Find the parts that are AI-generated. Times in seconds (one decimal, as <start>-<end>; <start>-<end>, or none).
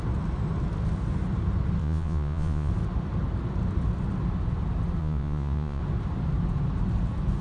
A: 1.8-2.7; 5.0-5.8